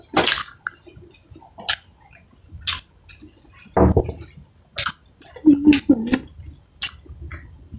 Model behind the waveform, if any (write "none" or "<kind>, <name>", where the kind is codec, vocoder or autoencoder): none